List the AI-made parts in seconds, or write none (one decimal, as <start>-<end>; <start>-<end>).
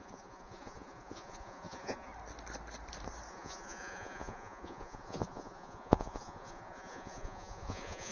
0.0-2.1; 3.3-8.1